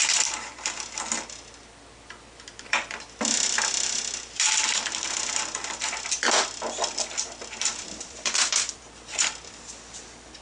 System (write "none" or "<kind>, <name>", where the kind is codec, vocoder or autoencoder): vocoder, BigVGAN v2